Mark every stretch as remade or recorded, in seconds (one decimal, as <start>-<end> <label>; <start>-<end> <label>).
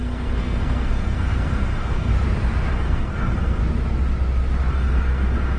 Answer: 0.0-2.1 remade; 2.1-2.7 recorded; 2.7-3.6 remade; 3.6-4.7 recorded; 4.7-5.6 remade